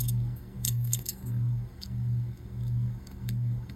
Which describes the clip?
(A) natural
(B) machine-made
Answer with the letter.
B